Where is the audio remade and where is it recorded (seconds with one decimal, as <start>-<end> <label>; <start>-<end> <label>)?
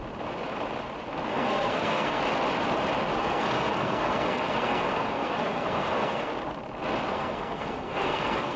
0.0-1.3 recorded; 1.3-2.2 remade; 2.2-3.2 recorded; 3.2-6.3 remade; 6.3-7.1 recorded; 7.1-8.6 remade